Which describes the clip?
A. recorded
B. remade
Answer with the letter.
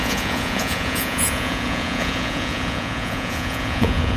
B